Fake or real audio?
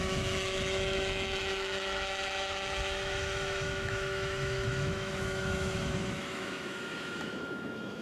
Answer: fake